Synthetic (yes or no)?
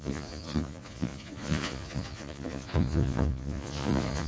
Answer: yes